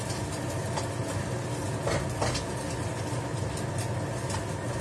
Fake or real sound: real